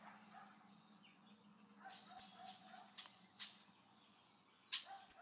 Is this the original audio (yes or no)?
no